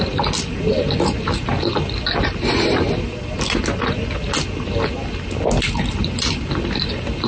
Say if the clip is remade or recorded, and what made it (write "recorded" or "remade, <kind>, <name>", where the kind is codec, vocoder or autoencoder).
recorded